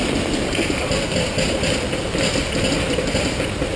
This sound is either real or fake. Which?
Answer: real